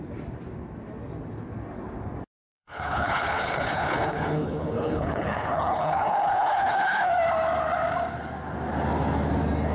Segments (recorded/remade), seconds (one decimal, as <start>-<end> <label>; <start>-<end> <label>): 0.0-2.5 recorded; 2.5-7.1 remade; 7.1-9.7 recorded